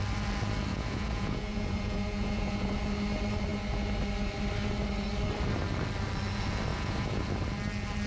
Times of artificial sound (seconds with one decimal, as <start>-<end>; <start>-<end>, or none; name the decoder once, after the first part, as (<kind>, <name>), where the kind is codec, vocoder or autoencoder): 0.7-2.7 (vocoder, Vocos); 6.7-7.2